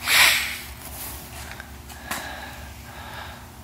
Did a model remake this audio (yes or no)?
no